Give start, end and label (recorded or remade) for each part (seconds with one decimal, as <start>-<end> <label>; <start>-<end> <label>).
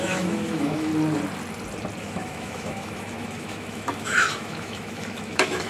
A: 0.0-0.9 remade; 0.9-2.0 recorded; 2.0-5.7 remade